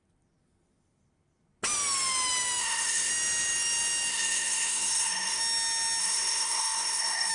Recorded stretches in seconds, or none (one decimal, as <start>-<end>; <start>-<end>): 0.0-2.6; 3.1-4.1; 5.4-6.0